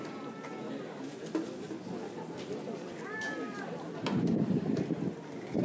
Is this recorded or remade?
recorded